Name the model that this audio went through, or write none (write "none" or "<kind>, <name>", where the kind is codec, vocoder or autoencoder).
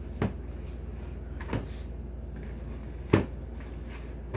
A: none